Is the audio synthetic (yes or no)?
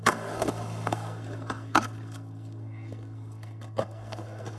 yes